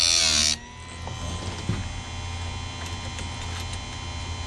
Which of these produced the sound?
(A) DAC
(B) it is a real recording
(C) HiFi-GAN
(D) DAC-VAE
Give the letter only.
B